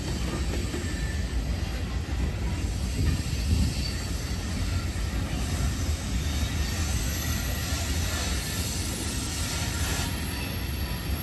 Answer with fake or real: real